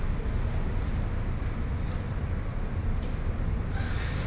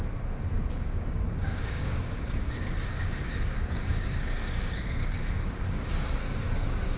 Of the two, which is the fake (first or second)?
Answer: second